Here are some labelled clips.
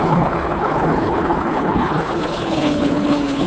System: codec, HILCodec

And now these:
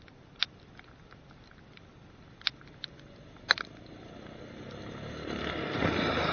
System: none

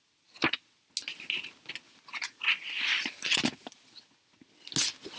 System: none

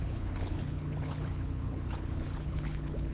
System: codec, HILCodec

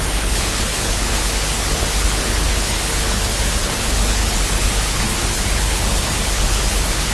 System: codec, HILCodec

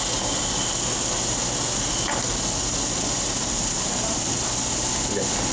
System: none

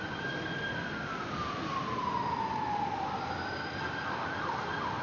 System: none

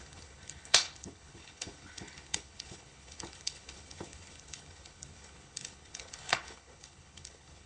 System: codec, HILCodec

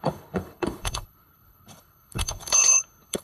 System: codec, HILCodec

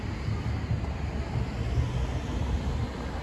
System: none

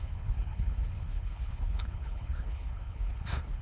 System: codec, HILCodec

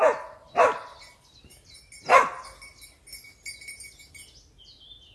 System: none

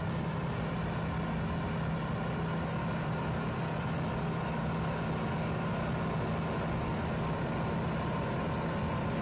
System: none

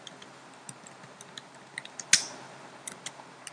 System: none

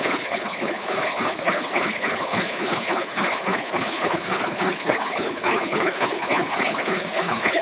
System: codec, HILCodec